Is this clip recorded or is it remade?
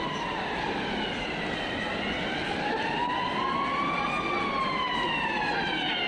recorded